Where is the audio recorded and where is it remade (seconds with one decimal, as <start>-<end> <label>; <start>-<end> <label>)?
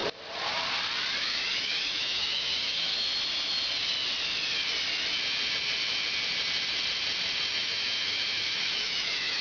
0.0-1.2 recorded; 1.2-3.1 remade; 3.1-7.5 recorded; 7.5-9.4 remade